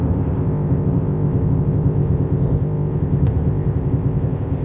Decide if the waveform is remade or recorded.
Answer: remade